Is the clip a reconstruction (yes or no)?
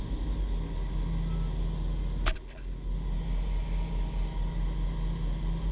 no